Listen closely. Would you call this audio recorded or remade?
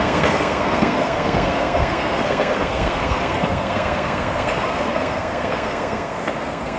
remade